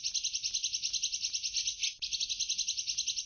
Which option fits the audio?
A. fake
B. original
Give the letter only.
B